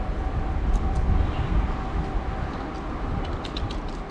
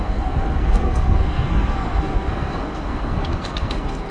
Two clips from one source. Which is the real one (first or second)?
first